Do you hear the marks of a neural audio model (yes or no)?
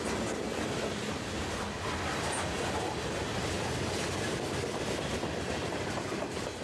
no